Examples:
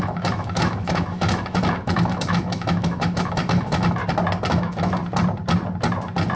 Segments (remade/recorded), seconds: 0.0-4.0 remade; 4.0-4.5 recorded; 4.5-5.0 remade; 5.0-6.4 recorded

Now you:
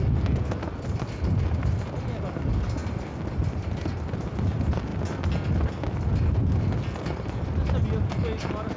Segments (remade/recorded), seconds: 0.0-8.8 recorded